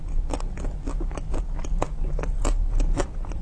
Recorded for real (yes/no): yes